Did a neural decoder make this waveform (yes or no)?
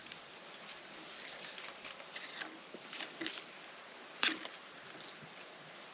yes